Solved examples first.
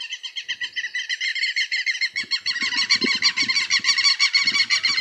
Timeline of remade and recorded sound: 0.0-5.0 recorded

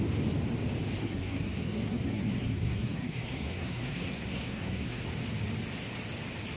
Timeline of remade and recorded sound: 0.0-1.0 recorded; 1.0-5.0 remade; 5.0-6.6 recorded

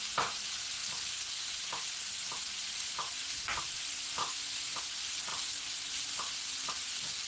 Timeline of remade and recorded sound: 0.0-4.2 recorded; 4.2-4.8 remade; 4.8-7.3 recorded